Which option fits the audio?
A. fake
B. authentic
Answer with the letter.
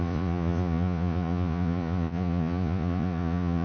A